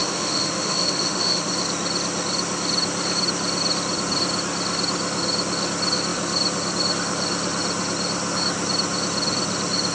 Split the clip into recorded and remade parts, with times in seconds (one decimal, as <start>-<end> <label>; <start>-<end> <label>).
0.0-1.5 remade; 1.5-9.9 recorded